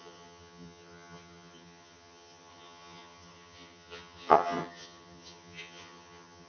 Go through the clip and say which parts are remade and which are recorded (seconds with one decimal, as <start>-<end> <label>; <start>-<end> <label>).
0.0-6.5 remade